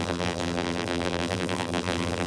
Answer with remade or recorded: remade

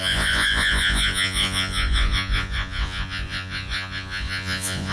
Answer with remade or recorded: remade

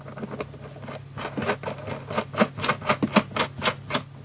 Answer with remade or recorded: recorded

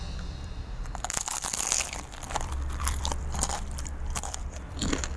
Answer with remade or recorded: remade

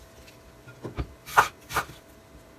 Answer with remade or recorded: recorded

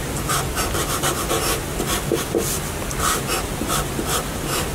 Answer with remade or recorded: recorded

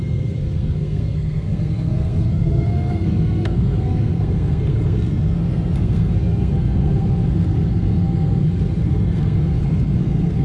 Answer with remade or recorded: remade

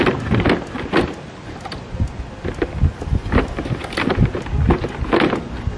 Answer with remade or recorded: recorded